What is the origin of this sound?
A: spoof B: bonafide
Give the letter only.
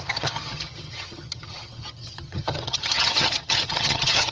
A